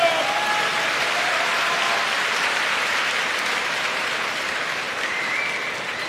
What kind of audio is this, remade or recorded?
recorded